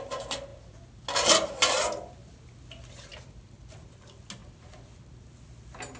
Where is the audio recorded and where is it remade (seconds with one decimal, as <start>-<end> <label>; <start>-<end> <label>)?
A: 0.0-6.0 recorded